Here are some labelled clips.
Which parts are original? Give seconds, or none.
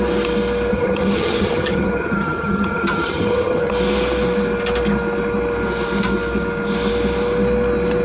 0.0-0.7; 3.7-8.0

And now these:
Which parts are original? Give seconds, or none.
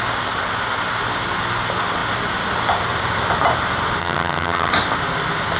0.0-4.0; 4.7-5.6